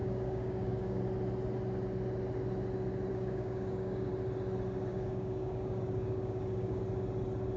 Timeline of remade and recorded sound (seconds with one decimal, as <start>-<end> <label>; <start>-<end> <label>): 0.0-1.0 remade; 1.0-3.1 recorded; 3.1-4.1 remade; 4.1-4.9 recorded; 4.9-6.8 remade; 6.8-7.6 recorded